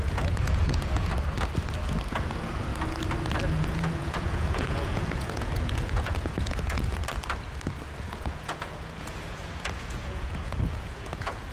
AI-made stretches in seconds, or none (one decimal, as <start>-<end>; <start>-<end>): 0.0-1.1; 2.1-2.7; 3.5-7.0; 8.1-11.5